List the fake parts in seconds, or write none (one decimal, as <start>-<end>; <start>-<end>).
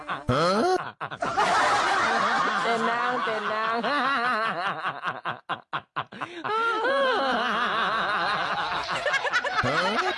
none